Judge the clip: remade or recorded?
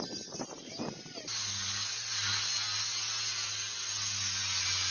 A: recorded